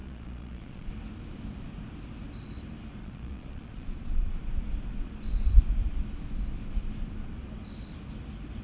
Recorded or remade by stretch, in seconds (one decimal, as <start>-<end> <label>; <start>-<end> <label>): 0.0-0.9 remade; 0.9-3.0 recorded; 3.0-4.3 remade; 4.3-8.6 recorded